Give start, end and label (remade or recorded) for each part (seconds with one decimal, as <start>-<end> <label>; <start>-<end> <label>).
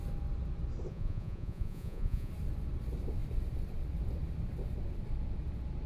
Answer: 0.0-0.9 recorded; 0.9-2.3 remade; 2.3-5.9 recorded